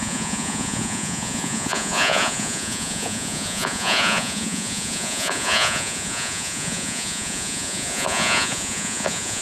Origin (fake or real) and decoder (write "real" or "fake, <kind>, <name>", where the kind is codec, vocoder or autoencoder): fake, vocoder, Vocos